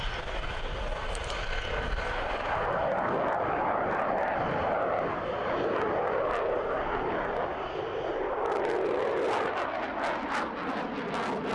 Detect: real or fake real